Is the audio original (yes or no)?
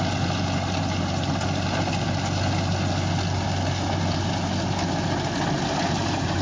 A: yes